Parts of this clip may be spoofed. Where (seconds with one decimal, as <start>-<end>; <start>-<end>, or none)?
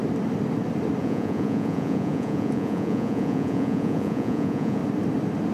1.0-4.8